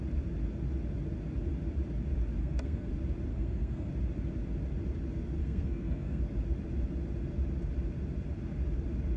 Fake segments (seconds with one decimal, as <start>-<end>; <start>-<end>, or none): 2.4-2.9; 3.3-3.9; 5.4-6.2